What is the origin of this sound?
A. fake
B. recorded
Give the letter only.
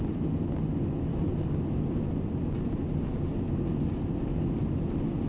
B